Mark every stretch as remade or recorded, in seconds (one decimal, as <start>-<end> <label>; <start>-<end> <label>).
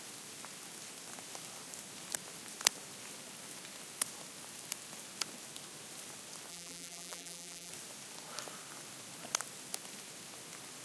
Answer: 0.0-6.5 recorded; 6.5-7.7 remade; 7.7-10.8 recorded